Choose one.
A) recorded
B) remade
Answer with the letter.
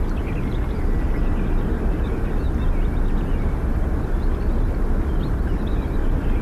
A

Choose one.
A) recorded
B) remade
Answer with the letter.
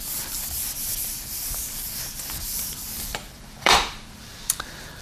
B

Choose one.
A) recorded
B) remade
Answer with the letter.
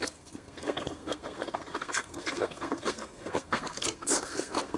B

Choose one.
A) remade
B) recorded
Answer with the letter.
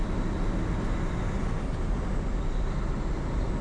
B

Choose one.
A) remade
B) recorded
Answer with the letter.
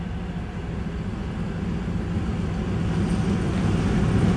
B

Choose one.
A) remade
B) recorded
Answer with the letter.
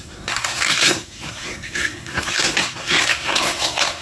A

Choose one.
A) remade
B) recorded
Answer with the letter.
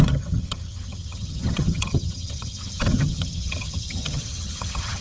A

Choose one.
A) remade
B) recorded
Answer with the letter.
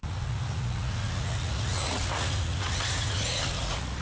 A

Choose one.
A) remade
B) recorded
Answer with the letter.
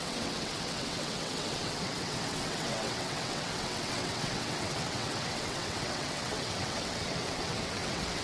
A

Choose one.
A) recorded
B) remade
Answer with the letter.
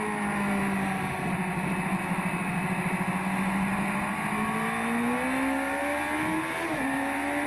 A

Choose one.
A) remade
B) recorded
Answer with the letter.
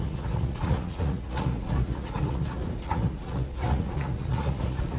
A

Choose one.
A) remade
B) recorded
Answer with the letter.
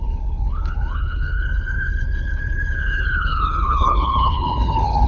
A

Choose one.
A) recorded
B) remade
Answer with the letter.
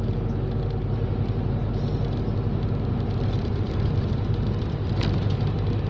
A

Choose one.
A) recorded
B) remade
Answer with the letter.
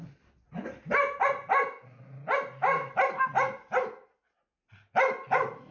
A